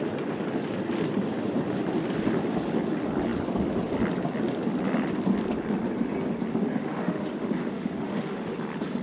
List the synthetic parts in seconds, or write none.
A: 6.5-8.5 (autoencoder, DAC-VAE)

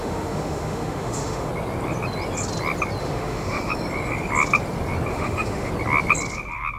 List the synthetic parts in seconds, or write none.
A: 0.0-1.5 (autoencoder, DAC-VAE); 3.0-3.7; 5.1-5.7

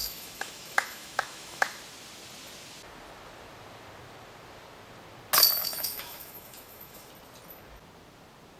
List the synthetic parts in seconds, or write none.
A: 0.0-1.8 (autoencoder, DAC-VAE); 5.6-7.1

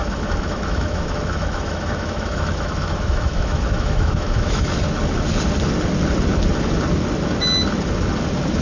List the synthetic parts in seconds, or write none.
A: 0.0-4.7 (autoencoder, DAC-VAE)

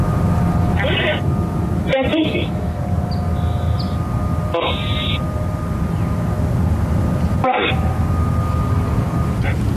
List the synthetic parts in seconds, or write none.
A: 2.2-2.8 (autoencoder, DAC-VAE)

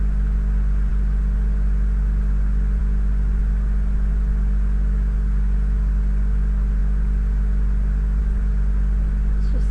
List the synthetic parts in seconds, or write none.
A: none

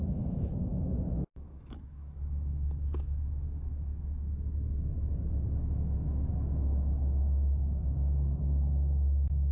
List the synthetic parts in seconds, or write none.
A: 0.0-3.9 (autoencoder, DAC-VAE); 5.3-9.5

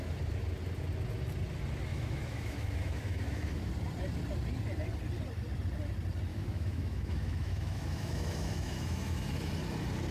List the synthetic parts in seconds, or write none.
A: 1.9-3.7 (autoencoder, DAC-VAE); 6.3-9.5